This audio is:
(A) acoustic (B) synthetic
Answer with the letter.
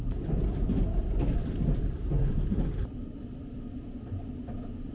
A